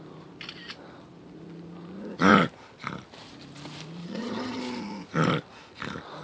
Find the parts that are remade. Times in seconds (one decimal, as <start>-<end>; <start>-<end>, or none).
4.0-4.6